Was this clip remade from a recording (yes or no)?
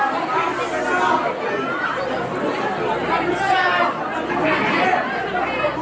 no